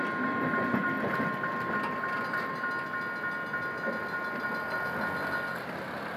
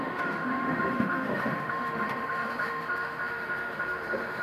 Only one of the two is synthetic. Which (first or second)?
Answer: second